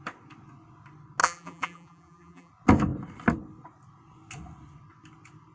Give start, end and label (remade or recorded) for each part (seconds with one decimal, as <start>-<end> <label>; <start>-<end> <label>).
0.0-1.2 recorded; 1.2-2.5 remade; 2.5-5.5 recorded